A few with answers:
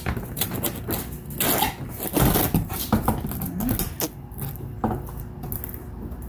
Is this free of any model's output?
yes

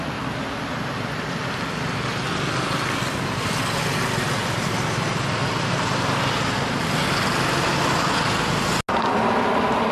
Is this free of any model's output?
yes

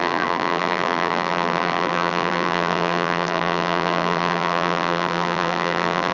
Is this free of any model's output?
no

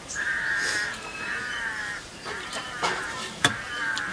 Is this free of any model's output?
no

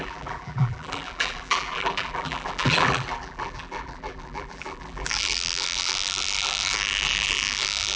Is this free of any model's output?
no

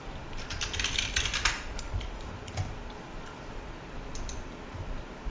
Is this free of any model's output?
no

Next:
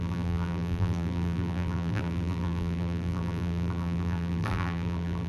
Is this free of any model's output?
no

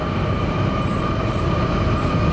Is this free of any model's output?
no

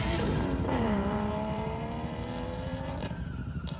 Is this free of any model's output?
no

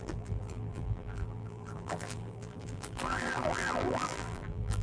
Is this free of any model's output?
no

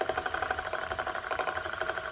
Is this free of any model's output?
no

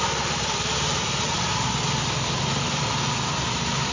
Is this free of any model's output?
no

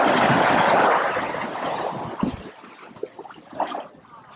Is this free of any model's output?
yes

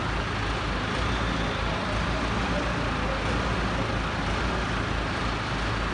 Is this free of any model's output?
yes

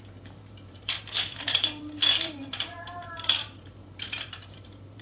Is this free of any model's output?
no